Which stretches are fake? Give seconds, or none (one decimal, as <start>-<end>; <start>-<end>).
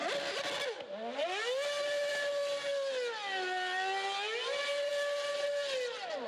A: none